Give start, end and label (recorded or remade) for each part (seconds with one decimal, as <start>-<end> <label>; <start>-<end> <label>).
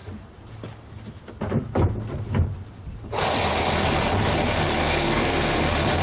0.0-4.8 recorded; 4.8-5.6 remade; 5.6-6.0 recorded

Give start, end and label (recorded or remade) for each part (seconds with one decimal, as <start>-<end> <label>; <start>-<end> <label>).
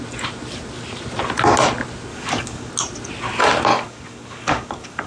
0.0-2.1 recorded; 2.1-2.7 remade; 2.7-3.7 recorded; 3.7-5.1 remade